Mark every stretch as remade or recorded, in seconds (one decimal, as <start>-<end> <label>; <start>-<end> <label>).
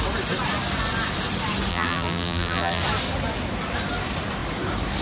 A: 0.0-1.7 recorded; 1.7-2.8 remade; 2.8-5.0 recorded